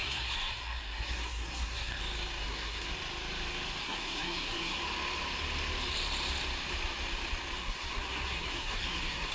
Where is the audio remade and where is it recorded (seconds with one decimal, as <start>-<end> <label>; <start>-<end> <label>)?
0.0-2.0 remade; 2.0-2.4 recorded; 2.4-2.9 remade; 2.9-3.8 recorded; 3.8-4.8 remade; 4.8-7.6 recorded; 7.6-9.3 remade